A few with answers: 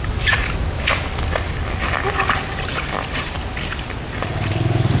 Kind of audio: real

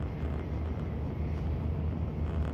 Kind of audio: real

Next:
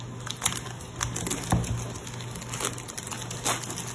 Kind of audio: real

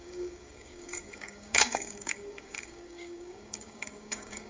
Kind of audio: fake